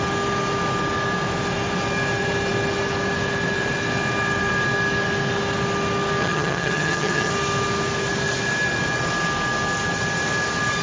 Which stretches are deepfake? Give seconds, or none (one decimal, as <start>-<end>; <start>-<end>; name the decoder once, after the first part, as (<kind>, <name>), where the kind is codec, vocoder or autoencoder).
6.2-7.3 (vocoder, HiFi-GAN)